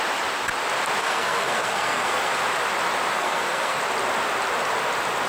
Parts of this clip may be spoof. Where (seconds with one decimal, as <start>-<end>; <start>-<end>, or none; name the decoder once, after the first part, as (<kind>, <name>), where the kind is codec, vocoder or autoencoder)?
1.0-2.4 (codec, SNAC); 3.1-3.8